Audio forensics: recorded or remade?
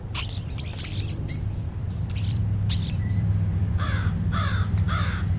remade